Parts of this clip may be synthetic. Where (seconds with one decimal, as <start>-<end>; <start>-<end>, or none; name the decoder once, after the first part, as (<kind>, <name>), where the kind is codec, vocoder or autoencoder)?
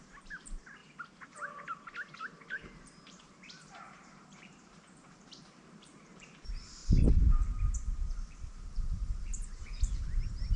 0.0-0.8 (vocoder, BigVGAN v2); 2.2-6.8; 7.3-9.3; 9.9-10.6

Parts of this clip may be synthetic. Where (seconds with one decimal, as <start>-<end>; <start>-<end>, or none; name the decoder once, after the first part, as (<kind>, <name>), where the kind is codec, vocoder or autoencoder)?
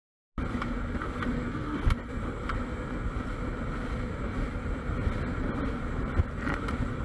4.2-5.0 (vocoder, BigVGAN v2); 6.2-7.0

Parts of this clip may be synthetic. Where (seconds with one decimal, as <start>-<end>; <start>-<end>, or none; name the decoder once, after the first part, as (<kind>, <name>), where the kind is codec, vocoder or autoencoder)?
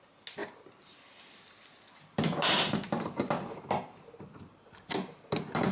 0.4-3.8 (vocoder, BigVGAN v2)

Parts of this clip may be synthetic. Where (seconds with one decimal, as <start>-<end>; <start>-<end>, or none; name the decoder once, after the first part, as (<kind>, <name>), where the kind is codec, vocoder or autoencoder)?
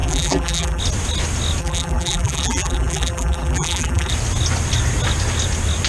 0.0-0.8 (vocoder, BigVGAN v2); 1.6-4.1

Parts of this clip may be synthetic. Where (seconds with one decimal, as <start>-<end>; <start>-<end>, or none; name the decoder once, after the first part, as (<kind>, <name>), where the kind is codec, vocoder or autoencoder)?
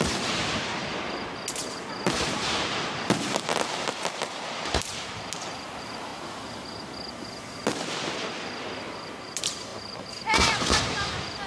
0.0-0.8 (vocoder, BigVGAN v2); 1.7-6.1; 8.9-11.5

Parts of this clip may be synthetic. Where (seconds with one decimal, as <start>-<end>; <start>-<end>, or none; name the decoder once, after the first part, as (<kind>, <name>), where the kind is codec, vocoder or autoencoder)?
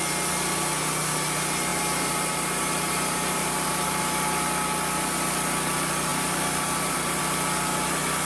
1.7-4.0 (vocoder, BigVGAN v2); 6.1-7.2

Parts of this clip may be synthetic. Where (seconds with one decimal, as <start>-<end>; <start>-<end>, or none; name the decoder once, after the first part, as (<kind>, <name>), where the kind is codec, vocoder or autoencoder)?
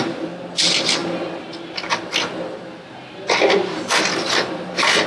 none